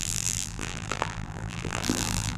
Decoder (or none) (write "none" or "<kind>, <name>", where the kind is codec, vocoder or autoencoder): vocoder, BigVGAN v2